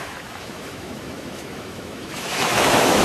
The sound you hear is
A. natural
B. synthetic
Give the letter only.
B